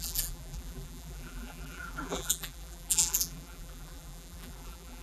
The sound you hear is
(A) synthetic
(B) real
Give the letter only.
A